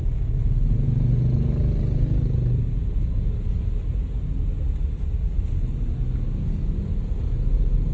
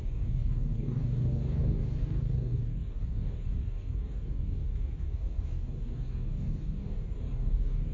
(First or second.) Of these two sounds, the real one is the first